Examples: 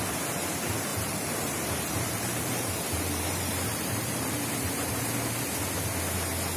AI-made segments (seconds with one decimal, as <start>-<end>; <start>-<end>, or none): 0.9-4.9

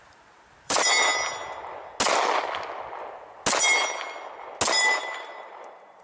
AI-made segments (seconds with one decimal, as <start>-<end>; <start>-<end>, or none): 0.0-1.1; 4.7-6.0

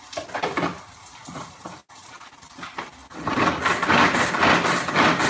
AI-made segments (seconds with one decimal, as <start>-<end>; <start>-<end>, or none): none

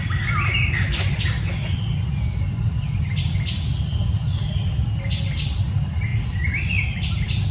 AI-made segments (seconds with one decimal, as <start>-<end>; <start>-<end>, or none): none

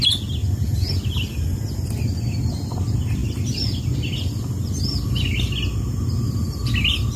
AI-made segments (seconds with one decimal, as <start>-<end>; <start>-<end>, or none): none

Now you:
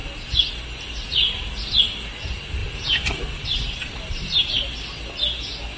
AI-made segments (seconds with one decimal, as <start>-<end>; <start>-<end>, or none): 2.6-4.7